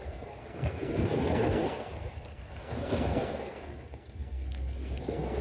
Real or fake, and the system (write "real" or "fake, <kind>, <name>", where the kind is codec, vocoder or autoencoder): fake, codec, SNAC